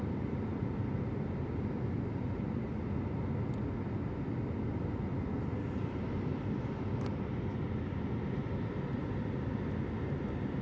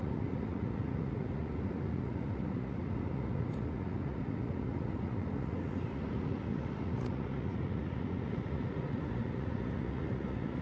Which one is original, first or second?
first